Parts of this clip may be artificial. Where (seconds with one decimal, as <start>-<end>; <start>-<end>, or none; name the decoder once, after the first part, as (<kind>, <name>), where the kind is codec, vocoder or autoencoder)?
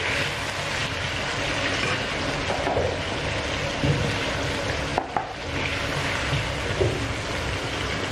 4.9-6.9 (vocoder, BigVGAN v2)